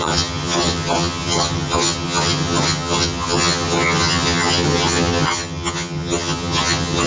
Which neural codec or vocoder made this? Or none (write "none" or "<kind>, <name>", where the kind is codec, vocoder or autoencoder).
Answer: vocoder, HiFi-GAN